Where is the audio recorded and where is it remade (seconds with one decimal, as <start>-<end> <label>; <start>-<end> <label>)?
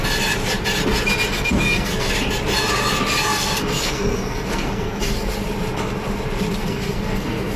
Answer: 0.0-1.3 recorded; 1.3-2.1 remade; 2.1-3.3 recorded; 3.3-5.3 remade; 5.3-6.6 recorded; 6.6-7.6 remade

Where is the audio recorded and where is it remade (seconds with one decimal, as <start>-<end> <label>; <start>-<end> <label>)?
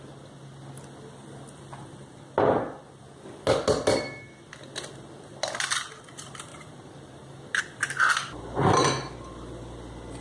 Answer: 0.0-6.5 recorded; 6.5-7.6 remade; 7.6-10.2 recorded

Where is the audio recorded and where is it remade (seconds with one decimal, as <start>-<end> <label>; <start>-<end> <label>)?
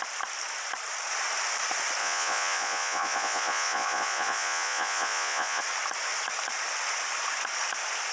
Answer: 0.0-2.0 recorded; 2.0-5.6 remade; 5.6-8.1 recorded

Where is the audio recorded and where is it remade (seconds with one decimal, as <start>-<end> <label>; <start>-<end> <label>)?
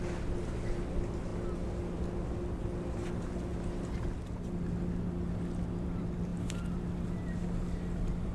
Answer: 0.0-8.3 recorded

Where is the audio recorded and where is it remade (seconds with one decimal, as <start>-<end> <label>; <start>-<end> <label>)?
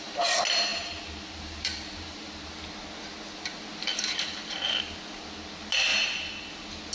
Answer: 0.0-0.7 recorded; 0.7-2.5 remade; 2.5-5.9 recorded; 5.9-6.5 remade; 6.5-6.9 recorded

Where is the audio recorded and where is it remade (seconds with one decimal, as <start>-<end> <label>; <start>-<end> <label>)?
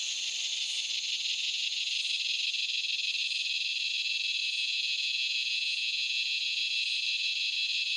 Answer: 0.0-1.3 recorded; 1.3-1.9 remade; 1.9-4.4 recorded; 4.4-6.6 remade; 6.6-8.0 recorded